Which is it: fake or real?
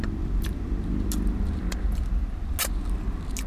real